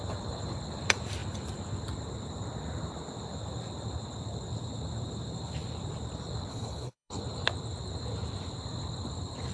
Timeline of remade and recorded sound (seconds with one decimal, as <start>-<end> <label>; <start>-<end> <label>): 0.0-6.5 recorded; 6.5-7.2 remade; 7.2-9.5 recorded